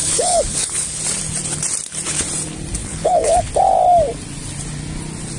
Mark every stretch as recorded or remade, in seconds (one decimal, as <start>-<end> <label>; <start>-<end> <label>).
0.0-1.0 remade; 1.0-2.8 recorded; 2.8-3.5 remade; 3.5-5.4 recorded